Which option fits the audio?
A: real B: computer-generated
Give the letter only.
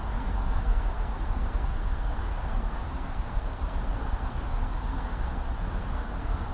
B